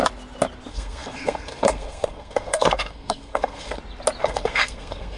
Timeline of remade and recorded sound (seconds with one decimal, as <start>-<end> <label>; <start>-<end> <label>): 0.0-0.7 recorded; 0.7-3.8 remade; 3.8-4.2 recorded; 4.2-5.2 remade